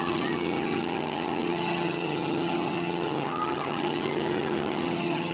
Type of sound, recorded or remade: remade